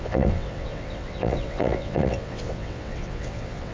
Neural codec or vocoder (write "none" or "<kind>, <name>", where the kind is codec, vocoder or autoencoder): vocoder, WaveNeXt